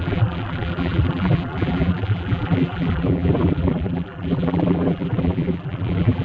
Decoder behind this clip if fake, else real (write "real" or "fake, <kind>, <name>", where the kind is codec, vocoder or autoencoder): fake, vocoder, BigVGAN v2